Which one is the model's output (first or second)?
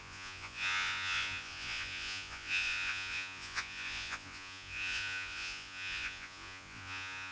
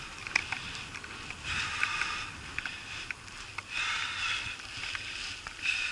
first